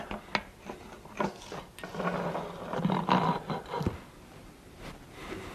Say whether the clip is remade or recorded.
recorded